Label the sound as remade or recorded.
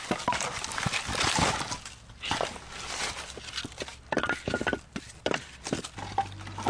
recorded